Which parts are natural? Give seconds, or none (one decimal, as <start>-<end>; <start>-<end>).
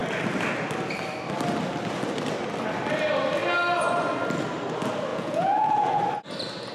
0.0-5.1; 6.0-6.7